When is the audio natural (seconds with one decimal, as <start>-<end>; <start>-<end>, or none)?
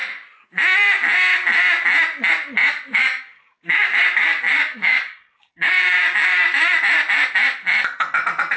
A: 0.0-2.9; 6.8-8.6